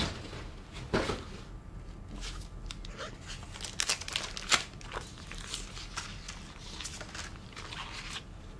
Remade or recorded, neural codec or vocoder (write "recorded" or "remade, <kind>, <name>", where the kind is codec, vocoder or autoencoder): recorded